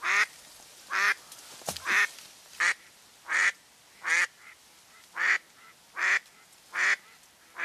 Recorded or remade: recorded